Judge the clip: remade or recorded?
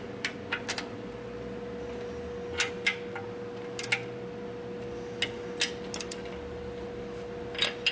recorded